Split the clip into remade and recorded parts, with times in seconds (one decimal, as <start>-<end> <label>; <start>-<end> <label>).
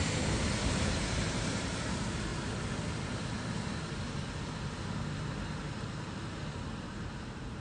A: 0.0-2.3 remade; 2.3-6.9 recorded; 6.9-7.6 remade